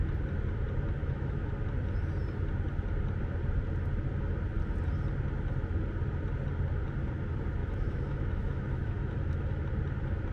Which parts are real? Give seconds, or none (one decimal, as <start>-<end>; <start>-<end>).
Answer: 0.0-1.0; 1.5-7.6; 9.6-10.3